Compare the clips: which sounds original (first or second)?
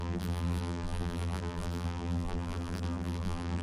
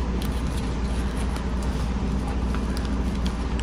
second